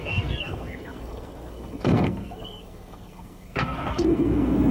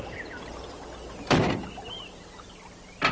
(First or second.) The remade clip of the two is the first